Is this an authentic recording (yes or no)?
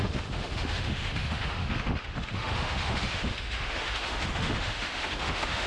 no